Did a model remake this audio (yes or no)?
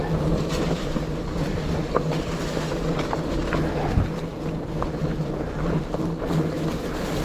no